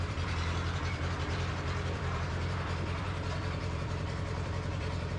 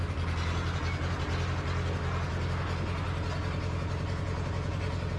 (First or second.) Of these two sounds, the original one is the second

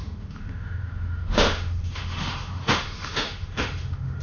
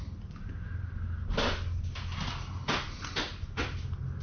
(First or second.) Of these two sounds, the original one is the second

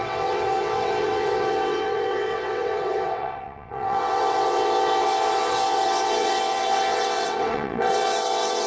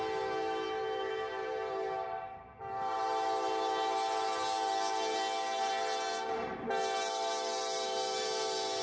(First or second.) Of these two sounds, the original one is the second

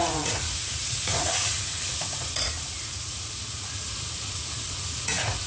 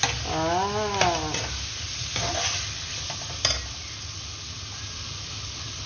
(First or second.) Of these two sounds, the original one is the second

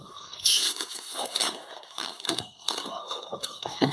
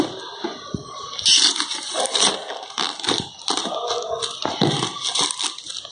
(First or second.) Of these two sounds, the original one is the second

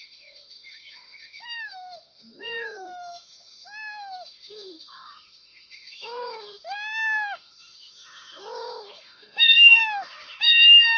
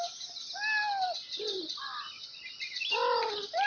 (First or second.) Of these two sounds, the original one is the second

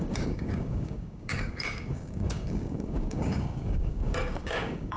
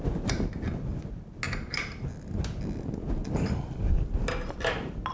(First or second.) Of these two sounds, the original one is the second